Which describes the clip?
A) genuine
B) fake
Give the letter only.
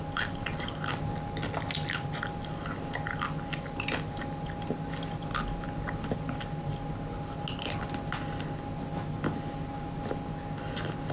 A